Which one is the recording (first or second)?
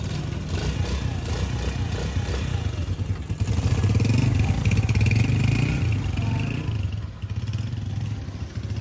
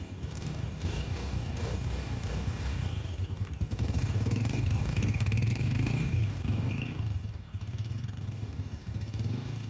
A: first